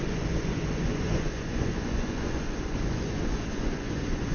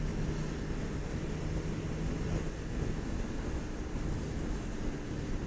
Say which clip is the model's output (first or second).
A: first